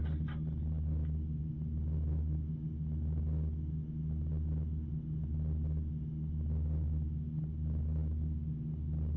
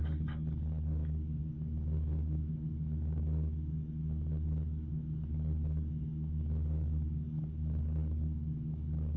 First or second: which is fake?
second